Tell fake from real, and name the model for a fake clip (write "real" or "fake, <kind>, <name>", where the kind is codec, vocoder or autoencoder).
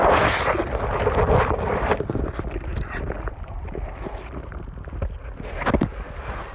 real